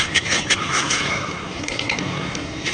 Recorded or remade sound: remade